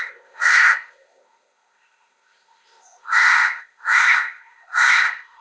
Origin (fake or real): fake